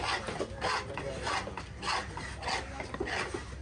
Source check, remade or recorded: recorded